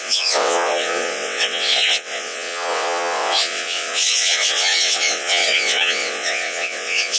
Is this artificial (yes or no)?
yes